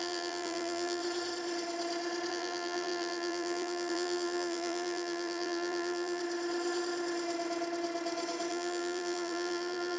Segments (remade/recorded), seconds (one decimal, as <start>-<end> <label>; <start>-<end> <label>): 0.0-1.0 remade; 1.0-2.3 recorded; 2.3-6.2 remade; 6.2-8.5 recorded; 8.5-10.0 remade